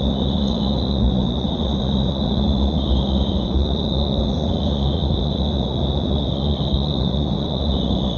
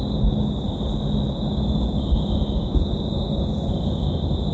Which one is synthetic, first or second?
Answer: first